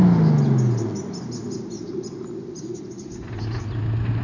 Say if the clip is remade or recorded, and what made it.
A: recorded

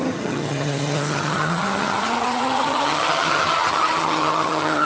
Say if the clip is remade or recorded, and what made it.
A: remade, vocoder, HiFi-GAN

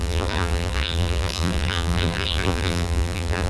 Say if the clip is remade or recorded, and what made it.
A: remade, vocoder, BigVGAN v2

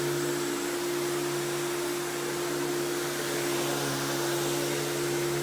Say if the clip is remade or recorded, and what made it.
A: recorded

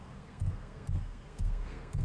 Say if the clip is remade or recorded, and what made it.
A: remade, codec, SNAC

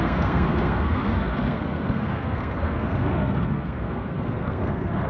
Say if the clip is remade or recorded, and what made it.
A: remade, codec, SNAC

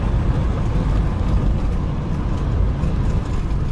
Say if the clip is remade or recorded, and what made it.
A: recorded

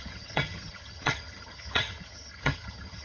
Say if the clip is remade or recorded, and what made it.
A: remade, vocoder, HiFi-GAN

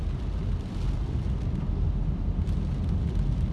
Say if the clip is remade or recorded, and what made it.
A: recorded